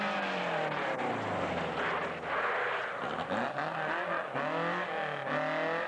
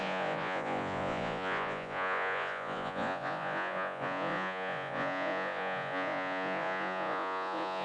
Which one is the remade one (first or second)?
second